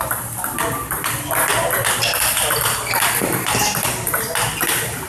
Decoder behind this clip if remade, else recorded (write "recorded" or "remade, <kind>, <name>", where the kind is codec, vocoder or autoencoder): recorded